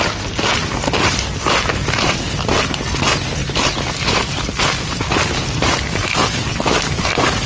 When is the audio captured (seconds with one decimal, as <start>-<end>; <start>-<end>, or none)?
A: 0.0-7.5